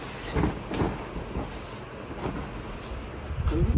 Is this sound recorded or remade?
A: recorded